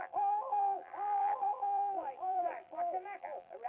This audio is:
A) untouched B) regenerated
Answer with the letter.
B